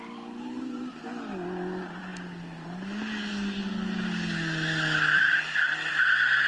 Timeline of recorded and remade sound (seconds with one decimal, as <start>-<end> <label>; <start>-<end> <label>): 0.0-6.5 recorded